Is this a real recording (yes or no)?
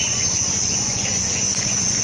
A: no